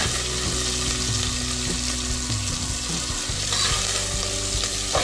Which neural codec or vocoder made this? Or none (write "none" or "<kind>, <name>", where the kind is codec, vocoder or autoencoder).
none